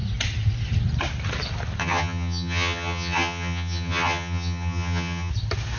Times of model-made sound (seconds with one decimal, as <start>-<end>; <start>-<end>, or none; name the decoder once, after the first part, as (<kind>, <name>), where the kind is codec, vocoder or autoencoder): 1.8-5.3 (vocoder, HiFi-GAN)